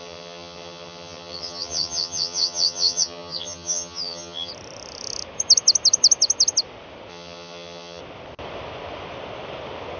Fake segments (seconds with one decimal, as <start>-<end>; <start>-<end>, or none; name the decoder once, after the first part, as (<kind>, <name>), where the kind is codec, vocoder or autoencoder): 0.0-4.5 (vocoder, HiFi-GAN); 7.1-8.0